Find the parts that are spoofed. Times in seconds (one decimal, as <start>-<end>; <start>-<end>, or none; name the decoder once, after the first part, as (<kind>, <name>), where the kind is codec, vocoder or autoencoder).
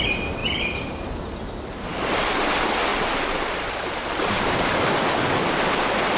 2.9-3.5 (vocoder, BigVGAN v2)